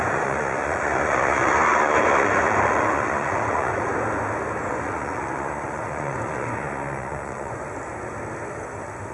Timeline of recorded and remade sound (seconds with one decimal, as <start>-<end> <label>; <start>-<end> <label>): 0.0-3.9 remade; 3.9-4.7 recorded; 4.7-7.6 remade; 7.6-9.1 recorded